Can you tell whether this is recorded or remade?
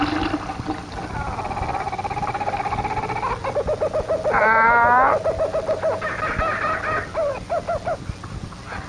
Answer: recorded